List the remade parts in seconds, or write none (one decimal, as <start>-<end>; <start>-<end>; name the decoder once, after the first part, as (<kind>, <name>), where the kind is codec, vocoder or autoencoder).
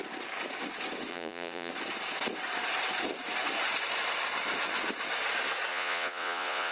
1.1-1.7 (vocoder, Vocos); 5.7-6.7